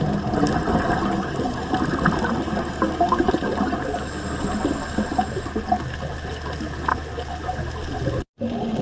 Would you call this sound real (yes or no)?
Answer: yes